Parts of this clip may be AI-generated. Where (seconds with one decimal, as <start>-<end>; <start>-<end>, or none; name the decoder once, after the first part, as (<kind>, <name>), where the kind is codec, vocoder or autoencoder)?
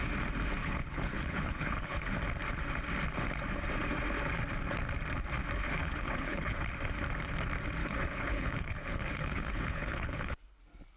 0.6-2.1 (codec, HILCodec); 5.8-6.7; 7.8-10.6